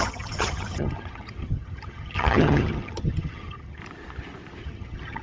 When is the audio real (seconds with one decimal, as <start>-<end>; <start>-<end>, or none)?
3.8-4.6